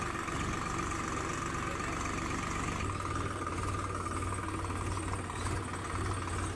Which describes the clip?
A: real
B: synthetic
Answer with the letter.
A